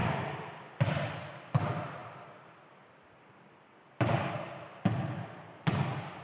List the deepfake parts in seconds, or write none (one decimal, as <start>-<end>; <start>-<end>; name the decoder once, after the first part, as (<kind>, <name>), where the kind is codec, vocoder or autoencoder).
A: 0.0-1.1 (vocoder, BigVGAN v2); 2.0-4.5